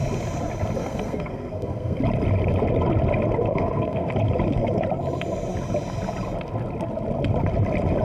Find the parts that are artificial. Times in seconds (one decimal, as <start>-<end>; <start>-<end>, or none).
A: 0.8-2.0; 3.5-4.1